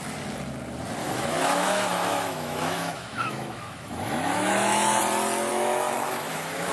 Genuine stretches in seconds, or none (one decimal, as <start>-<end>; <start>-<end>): 0.0-1.0; 5.0-5.5